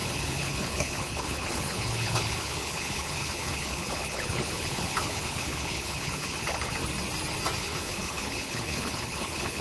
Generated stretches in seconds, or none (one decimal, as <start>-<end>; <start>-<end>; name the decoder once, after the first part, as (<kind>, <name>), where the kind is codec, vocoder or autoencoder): 0.0-6.8 (codec, HILCodec); 7.6-9.6